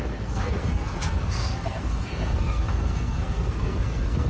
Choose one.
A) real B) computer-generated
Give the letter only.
B